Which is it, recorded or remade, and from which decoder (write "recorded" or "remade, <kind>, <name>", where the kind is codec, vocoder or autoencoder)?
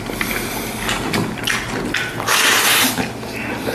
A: recorded